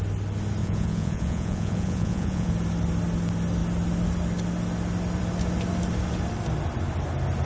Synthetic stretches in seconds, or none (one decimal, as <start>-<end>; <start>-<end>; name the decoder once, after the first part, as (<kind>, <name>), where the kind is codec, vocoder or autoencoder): 0.6-2.5 (vocoder, Vocos)